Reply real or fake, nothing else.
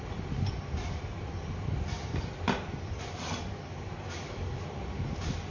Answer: real